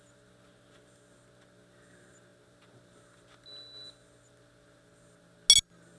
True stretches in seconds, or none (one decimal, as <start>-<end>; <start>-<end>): 0.0-6.0